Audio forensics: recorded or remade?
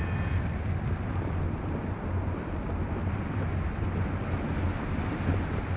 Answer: recorded